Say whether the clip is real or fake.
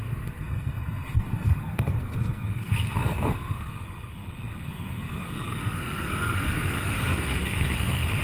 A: fake